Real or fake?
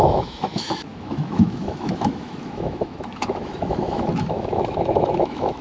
fake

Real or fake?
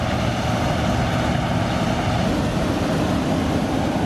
real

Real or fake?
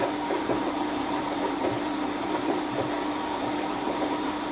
fake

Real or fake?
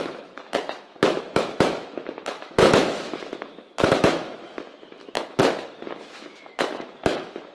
fake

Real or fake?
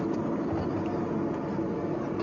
real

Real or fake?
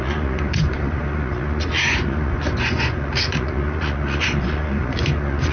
fake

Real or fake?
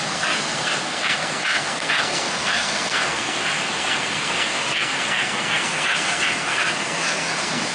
fake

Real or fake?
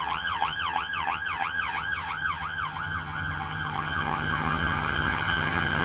fake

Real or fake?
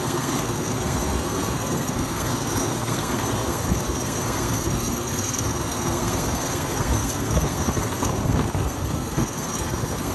fake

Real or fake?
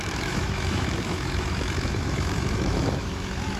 fake